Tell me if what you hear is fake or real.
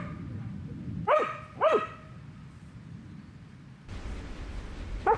fake